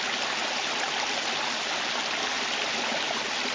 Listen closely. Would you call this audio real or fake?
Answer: real